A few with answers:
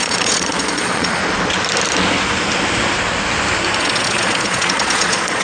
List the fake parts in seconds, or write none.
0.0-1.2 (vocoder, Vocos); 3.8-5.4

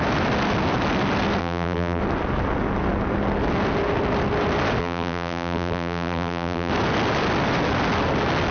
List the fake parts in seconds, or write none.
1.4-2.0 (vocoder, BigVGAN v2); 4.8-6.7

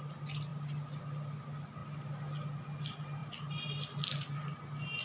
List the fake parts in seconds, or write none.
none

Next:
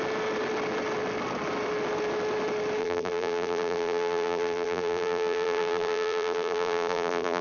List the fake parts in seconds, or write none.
2.8-7.4 (vocoder, BigVGAN v2)

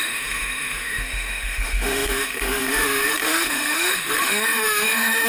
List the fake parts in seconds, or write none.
0.0-5.3 (autoencoder, DAC-VAE)

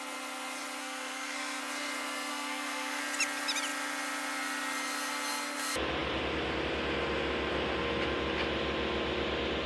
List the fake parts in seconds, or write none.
0.8-1.6 (codec, SNAC); 2.3-3.0